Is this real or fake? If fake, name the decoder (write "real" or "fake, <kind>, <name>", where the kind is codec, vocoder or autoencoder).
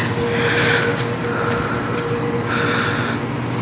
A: real